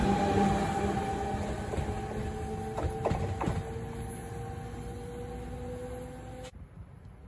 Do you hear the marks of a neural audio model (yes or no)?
no